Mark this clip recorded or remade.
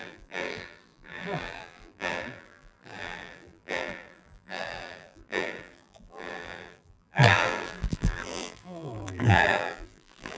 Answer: remade